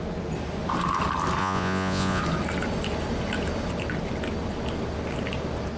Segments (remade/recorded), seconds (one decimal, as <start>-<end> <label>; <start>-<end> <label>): 0.0-1.4 recorded; 1.4-2.2 remade; 2.2-5.8 recorded